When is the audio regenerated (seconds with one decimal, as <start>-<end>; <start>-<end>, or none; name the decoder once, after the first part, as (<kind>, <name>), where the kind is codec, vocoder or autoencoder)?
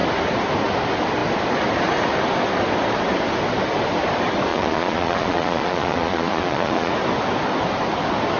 4.5-6.9 (vocoder, Vocos)